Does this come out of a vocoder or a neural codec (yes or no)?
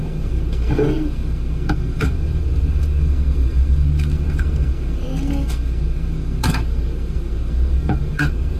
yes